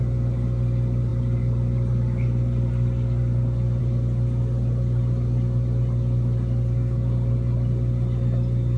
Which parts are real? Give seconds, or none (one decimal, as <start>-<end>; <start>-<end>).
0.0-8.8